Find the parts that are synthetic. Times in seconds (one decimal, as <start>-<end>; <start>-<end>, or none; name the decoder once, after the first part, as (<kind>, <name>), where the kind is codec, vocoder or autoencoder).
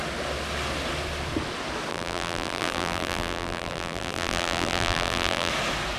1.9-5.5 (vocoder, BigVGAN v2)